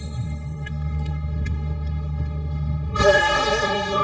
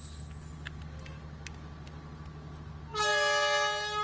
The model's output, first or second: first